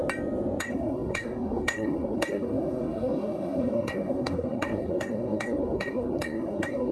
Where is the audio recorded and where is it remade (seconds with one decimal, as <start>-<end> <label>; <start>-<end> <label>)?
0.0-0.6 recorded; 0.6-6.9 remade